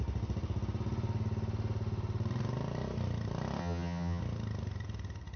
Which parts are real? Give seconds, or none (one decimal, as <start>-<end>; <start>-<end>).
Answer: 0.0-3.6; 4.2-5.4